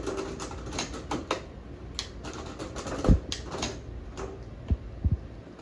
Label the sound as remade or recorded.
recorded